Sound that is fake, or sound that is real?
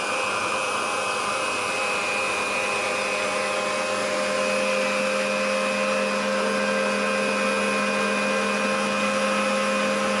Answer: real